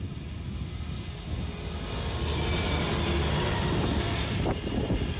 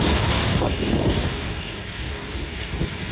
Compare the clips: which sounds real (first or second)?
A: first